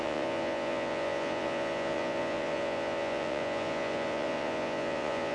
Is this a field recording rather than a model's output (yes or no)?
no